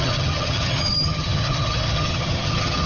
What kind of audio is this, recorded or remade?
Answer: remade